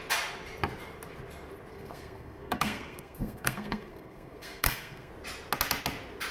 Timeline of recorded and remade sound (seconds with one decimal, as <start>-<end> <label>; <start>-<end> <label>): 0.0-1.7 recorded; 1.7-5.1 remade; 5.1-6.3 recorded